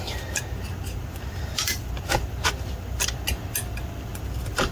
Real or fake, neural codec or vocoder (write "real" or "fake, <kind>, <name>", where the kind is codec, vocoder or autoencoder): real